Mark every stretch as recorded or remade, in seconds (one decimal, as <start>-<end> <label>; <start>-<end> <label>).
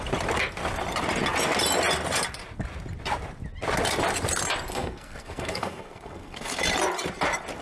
0.0-4.7 recorded; 4.7-6.6 remade; 6.6-7.6 recorded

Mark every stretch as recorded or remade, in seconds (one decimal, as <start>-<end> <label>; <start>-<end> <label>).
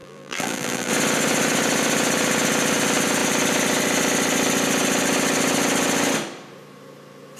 0.0-0.9 remade; 0.9-7.4 recorded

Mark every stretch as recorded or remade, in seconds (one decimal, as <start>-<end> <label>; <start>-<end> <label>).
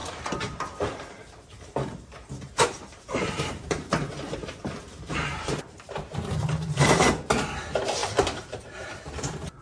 0.0-1.7 remade; 1.7-2.9 recorded; 2.9-7.0 remade; 7.0-8.0 recorded; 8.0-9.6 remade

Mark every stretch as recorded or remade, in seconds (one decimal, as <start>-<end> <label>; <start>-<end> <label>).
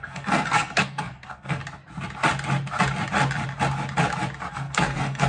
0.0-1.6 remade; 1.6-4.5 recorded; 4.5-5.3 remade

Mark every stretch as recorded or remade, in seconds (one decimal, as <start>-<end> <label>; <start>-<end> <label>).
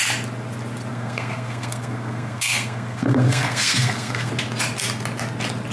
0.0-0.9 recorded; 0.9-4.3 remade; 4.3-5.7 recorded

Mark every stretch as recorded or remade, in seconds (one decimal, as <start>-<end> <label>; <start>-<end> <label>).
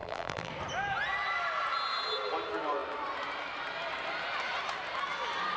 0.0-0.5 remade; 0.5-5.6 recorded